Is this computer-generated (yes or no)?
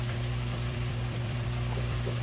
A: yes